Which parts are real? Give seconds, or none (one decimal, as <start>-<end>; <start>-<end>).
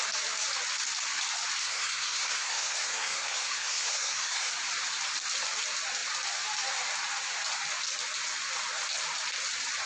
0.0-1.6; 4.5-9.9